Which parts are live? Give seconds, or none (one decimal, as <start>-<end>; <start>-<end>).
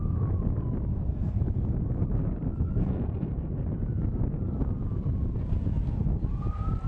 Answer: 0.0-0.9; 1.4-2.8; 3.6-6.9